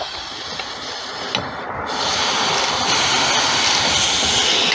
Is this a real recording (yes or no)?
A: yes